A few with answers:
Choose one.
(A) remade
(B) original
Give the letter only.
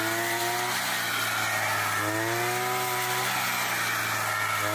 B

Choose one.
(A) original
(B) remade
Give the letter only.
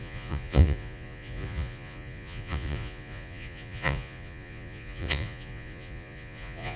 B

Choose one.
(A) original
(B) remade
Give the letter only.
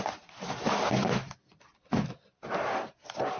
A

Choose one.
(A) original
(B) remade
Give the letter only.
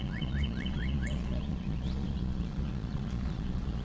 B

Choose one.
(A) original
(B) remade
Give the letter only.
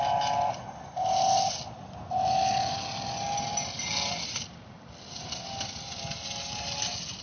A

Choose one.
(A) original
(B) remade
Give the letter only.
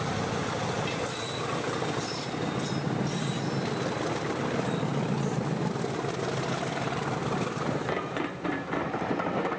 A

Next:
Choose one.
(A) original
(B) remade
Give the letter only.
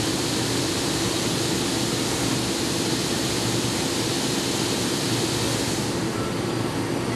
B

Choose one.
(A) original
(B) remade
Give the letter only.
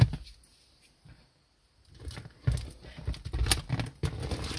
A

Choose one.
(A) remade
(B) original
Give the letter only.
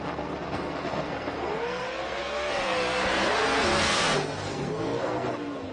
A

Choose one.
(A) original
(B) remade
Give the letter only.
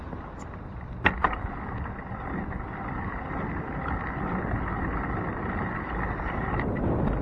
A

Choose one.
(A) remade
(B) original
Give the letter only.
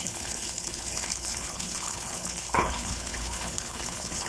A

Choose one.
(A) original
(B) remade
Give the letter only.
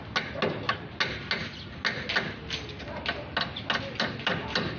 A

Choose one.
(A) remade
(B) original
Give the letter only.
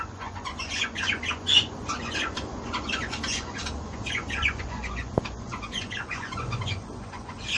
A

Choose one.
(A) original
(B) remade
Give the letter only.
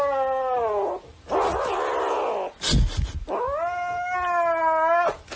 A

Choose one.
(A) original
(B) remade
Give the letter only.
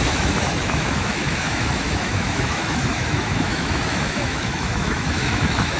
B